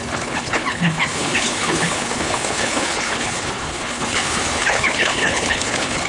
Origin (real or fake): fake